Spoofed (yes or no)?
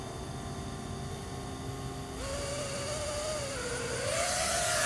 no